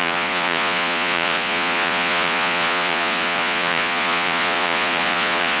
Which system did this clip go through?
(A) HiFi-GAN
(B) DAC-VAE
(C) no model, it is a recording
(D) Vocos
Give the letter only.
D